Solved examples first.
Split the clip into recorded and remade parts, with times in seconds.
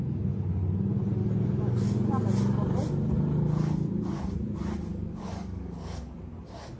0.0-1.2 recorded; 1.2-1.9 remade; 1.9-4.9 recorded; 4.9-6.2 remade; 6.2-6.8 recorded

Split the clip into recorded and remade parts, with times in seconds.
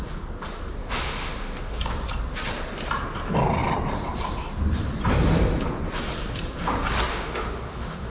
0.0-0.8 recorded; 0.8-1.8 remade; 1.8-7.1 recorded; 7.1-8.1 remade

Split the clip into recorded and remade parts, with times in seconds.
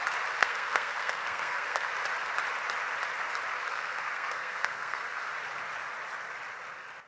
0.0-0.4 recorded; 0.4-1.9 remade; 1.9-3.7 recorded; 3.7-5.3 remade; 5.3-7.1 recorded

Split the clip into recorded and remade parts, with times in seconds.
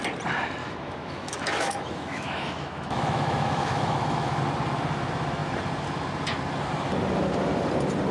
0.0-0.6 recorded; 0.6-4.4 remade; 4.4-8.1 recorded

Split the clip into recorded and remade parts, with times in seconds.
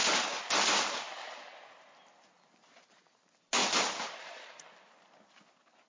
0.0-2.6 remade; 2.6-3.6 recorded; 3.6-5.1 remade; 5.1-5.9 recorded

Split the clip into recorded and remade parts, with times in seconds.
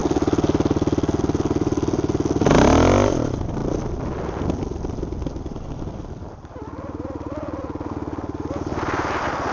0.0-9.5 recorded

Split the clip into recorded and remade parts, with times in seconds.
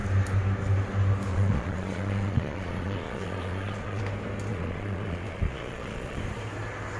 0.0-1.3 recorded; 1.3-4.0 remade; 4.0-4.5 recorded; 4.5-6.2 remade; 6.2-7.0 recorded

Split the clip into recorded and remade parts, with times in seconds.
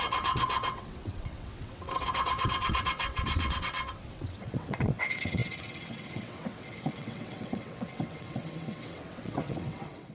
0.0-10.1 remade